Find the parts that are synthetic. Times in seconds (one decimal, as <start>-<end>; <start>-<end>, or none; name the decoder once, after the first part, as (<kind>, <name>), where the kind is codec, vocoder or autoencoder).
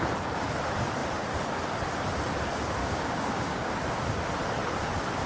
2.8-3.7 (codec, DAC)